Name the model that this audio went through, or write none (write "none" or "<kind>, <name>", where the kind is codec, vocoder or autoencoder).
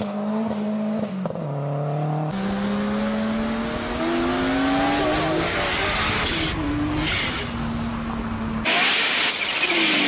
none